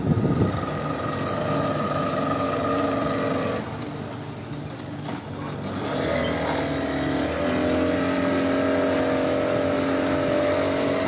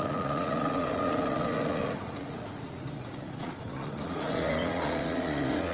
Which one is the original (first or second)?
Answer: first